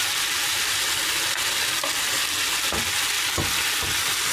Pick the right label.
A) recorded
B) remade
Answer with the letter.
A